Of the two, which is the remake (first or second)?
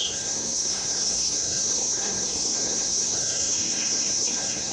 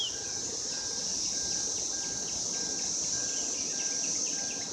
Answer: first